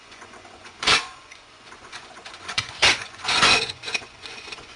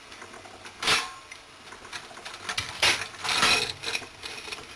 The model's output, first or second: first